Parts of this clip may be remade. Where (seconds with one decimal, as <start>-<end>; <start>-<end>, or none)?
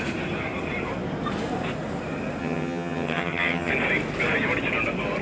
2.4-3.7